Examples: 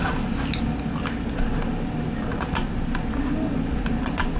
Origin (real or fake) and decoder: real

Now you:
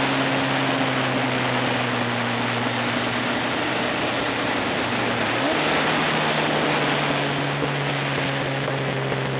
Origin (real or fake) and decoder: real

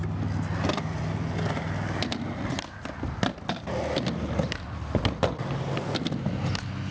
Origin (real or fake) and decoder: real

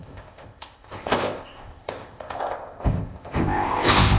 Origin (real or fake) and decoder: fake, codec, ZipCodec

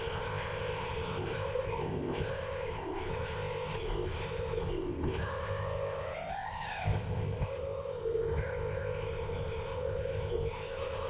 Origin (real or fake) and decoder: fake, codec, ZipCodec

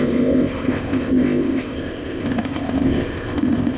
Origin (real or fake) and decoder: fake, codec, ZipCodec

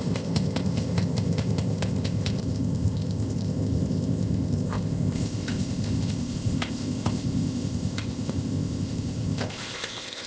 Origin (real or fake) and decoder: fake, codec, ZipCodec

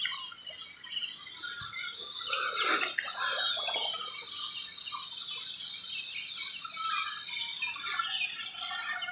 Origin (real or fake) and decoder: real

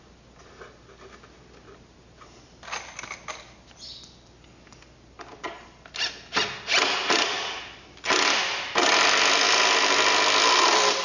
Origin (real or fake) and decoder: real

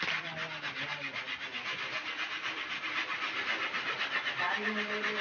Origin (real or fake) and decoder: real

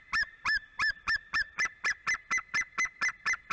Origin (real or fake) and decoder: real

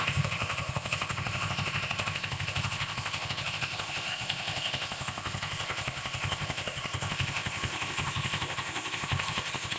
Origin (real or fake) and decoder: fake, codec, ZipCodec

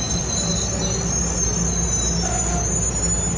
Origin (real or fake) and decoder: real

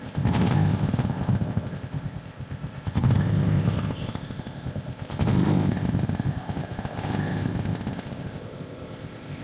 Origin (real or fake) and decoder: fake, codec, ZipCodec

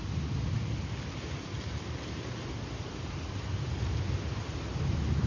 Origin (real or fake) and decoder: real